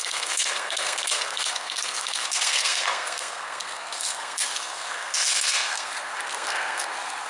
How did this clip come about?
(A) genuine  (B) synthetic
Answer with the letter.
B